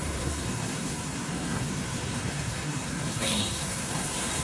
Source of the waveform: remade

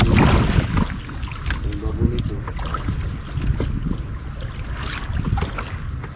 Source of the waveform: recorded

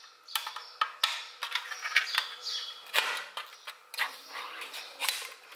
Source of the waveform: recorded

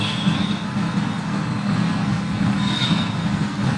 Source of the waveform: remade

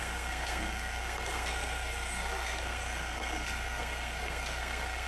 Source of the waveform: remade